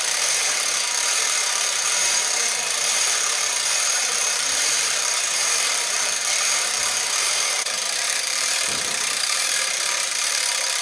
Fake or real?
fake